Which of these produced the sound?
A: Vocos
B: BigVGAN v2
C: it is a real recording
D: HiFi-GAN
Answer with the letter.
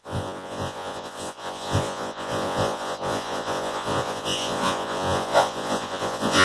A